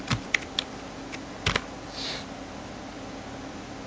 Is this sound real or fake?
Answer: real